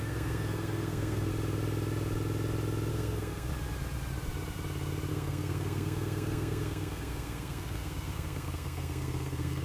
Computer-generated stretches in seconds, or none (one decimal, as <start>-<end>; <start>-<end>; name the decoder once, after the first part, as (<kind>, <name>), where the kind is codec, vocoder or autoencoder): 0.0-1.3 (codec, SNAC); 2.9-3.5; 5.1-9.6